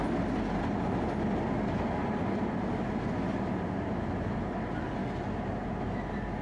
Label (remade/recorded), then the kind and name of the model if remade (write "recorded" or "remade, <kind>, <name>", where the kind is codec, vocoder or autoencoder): recorded